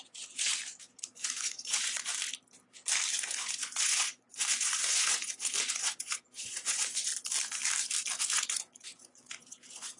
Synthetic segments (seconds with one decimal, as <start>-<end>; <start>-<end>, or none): 0.0-0.6; 1.1-2.1; 3.1-7.1; 8.2-10.0